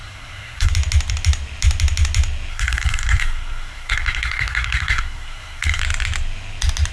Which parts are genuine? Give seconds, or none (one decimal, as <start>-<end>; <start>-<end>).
0.7-2.5; 5.8-6.9